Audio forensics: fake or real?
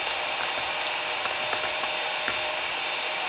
real